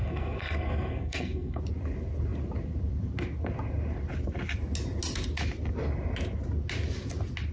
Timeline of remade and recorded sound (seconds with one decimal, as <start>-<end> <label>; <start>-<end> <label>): 0.0-1.6 remade; 1.6-7.5 recorded